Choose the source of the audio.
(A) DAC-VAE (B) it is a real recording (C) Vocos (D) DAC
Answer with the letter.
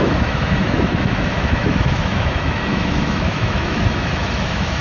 A